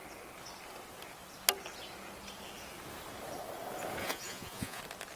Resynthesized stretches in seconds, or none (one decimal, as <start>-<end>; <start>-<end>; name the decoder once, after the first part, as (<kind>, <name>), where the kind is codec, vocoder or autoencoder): 4.0-4.8 (vocoder, Vocos)